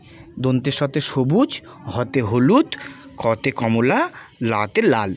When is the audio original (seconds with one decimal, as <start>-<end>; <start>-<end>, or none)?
0.0-5.2